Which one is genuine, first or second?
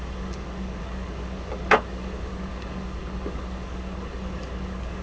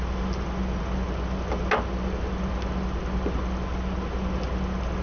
second